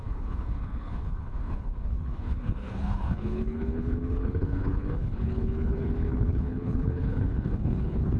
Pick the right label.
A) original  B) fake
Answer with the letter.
B